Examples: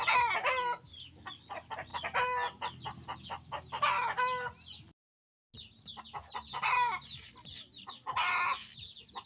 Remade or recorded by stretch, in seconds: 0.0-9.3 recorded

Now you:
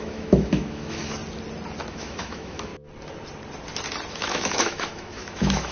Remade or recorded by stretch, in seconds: 0.0-1.2 remade; 1.2-1.9 recorded; 1.9-2.7 remade; 2.7-4.1 recorded; 4.1-5.7 remade

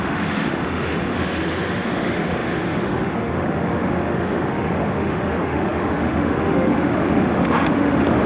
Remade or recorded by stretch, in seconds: 0.0-8.3 remade

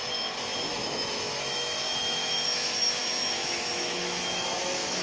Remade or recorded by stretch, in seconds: 0.0-0.7 recorded; 0.7-5.0 remade

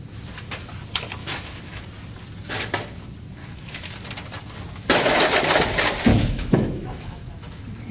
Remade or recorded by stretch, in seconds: 0.0-1.2 recorded; 1.2-1.8 remade; 1.8-3.4 recorded; 3.4-3.9 remade; 3.9-6.1 recorded; 6.1-7.3 remade; 7.3-7.9 recorded

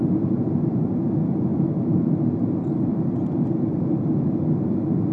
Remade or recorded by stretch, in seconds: 0.0-5.1 recorded